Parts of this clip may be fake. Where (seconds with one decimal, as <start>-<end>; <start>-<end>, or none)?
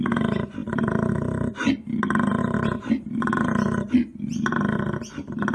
none